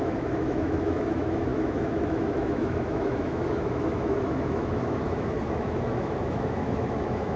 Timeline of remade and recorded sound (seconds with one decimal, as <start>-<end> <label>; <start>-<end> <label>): 0.0-7.4 remade